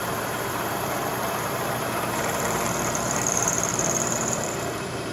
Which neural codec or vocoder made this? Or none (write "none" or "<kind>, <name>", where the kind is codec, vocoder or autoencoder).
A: vocoder, BigVGAN v2